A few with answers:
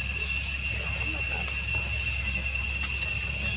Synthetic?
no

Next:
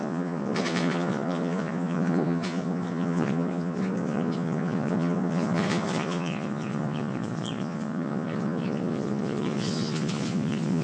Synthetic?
yes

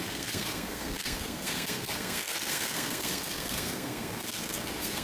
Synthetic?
yes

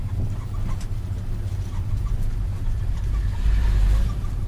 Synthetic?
yes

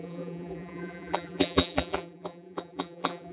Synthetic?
yes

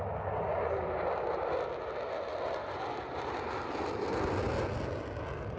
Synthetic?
no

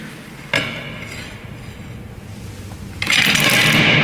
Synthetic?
no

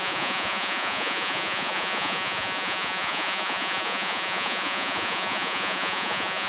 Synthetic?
yes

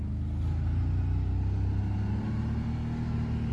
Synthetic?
no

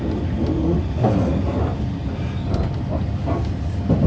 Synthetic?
no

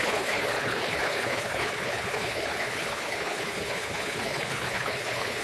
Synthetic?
yes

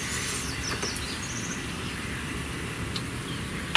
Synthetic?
yes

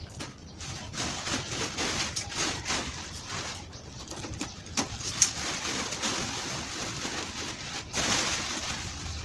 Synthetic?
no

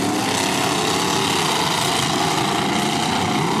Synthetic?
no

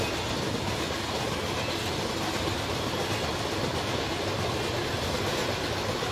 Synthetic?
no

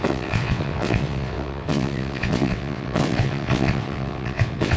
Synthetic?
yes